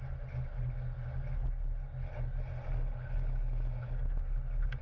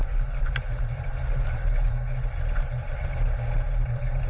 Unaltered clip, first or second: first